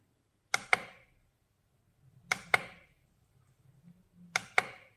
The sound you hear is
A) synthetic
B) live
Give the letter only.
B